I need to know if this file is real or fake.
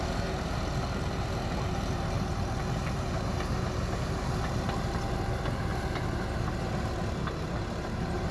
fake